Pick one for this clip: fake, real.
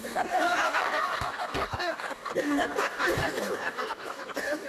fake